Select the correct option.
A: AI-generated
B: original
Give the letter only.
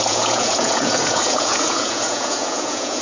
A